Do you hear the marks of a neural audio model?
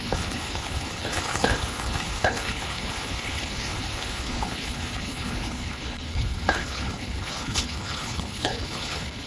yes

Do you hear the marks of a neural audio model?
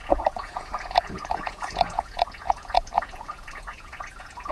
yes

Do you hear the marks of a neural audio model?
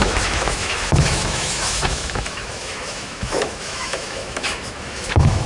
yes